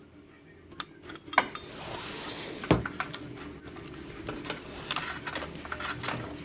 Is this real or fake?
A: real